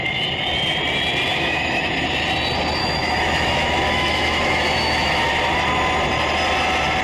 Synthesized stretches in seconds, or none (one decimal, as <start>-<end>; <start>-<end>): 1.3-1.9; 2.8-5.2